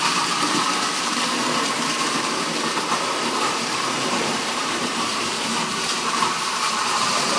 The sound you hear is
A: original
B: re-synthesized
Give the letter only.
B